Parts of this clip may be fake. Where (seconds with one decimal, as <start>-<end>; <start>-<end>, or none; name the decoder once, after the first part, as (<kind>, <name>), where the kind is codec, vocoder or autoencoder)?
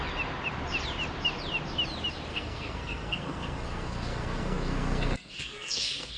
2.3-6.2 (codec, SNAC)